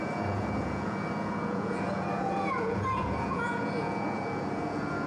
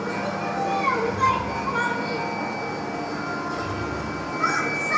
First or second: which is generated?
first